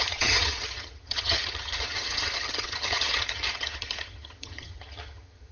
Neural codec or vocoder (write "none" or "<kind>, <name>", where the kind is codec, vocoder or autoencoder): vocoder, HiFi-GAN